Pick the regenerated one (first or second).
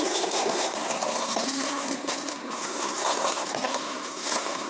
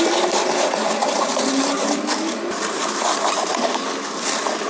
first